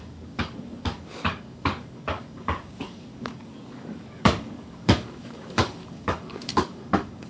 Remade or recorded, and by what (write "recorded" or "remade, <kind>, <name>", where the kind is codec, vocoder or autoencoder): remade, codec, DAC